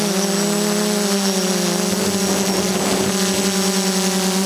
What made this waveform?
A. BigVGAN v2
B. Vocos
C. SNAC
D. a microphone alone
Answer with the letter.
D